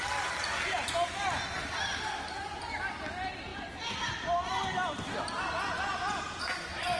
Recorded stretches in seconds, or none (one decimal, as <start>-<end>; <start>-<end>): 0.0-5.9; 6.5-7.0